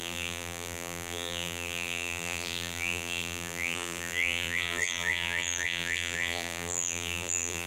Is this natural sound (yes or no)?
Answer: no